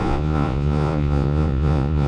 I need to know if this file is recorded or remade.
remade